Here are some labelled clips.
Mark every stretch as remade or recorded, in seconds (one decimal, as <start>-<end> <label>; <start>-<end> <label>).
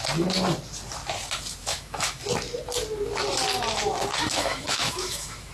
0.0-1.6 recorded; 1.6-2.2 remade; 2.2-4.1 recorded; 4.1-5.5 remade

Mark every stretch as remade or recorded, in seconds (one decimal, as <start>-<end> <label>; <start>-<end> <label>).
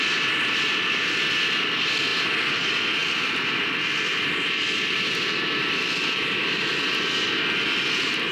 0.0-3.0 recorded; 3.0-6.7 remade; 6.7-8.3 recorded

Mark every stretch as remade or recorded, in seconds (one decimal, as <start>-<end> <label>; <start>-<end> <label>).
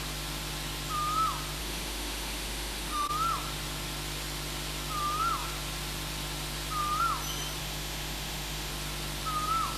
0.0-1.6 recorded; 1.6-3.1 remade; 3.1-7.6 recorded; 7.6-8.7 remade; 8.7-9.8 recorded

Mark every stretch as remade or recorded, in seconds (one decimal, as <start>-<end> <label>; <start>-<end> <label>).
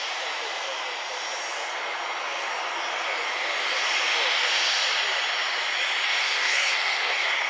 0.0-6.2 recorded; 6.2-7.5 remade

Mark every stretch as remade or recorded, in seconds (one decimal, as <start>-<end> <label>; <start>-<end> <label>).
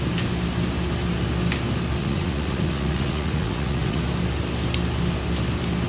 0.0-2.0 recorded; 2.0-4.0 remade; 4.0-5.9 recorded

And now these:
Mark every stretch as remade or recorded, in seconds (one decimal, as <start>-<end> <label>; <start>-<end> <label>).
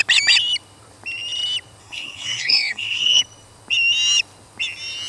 0.0-1.8 recorded; 1.8-3.2 remade; 3.2-5.1 recorded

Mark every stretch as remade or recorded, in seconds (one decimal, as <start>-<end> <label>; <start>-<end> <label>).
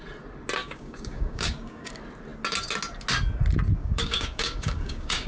0.0-0.6 recorded; 0.6-1.9 remade; 1.9-3.8 recorded; 3.8-5.3 remade